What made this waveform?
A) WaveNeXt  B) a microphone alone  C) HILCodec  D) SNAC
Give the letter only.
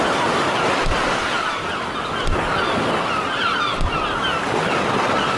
B